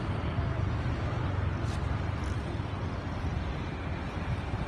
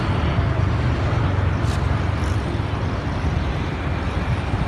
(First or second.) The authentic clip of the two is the second